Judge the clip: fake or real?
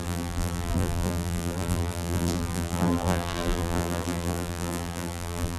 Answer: fake